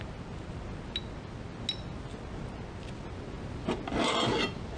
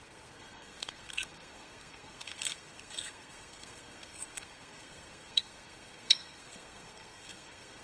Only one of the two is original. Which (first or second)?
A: first